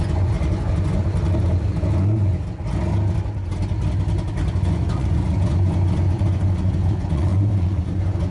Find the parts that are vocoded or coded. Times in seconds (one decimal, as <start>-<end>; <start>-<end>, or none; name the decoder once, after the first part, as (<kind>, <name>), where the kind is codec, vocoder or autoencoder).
0.0-1.0 (vocoder, Vocos); 4.5-8.3